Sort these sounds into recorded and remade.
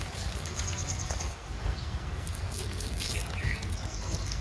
remade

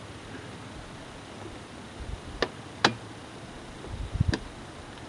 recorded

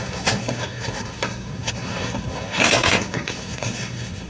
remade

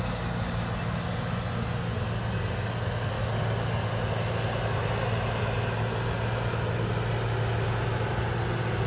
recorded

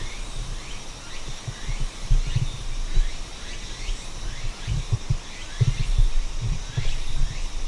recorded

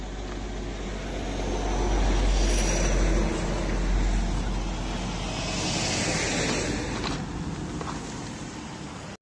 recorded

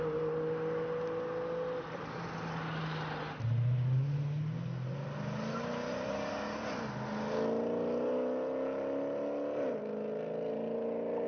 recorded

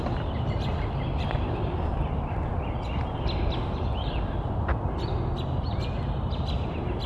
recorded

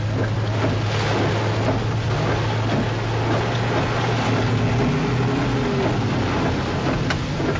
recorded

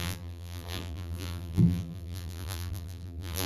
remade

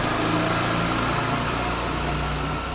recorded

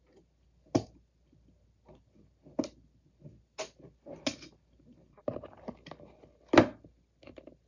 recorded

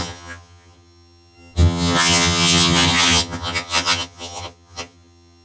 remade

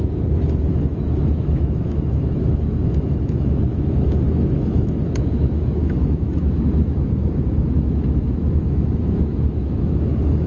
remade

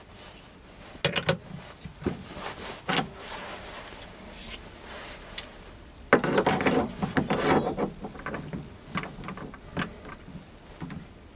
recorded